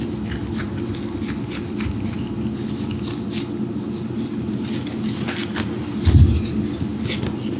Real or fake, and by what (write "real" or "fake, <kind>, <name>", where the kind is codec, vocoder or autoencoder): real